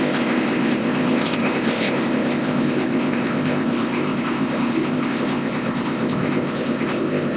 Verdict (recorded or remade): remade